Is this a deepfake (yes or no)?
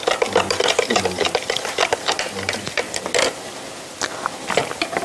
no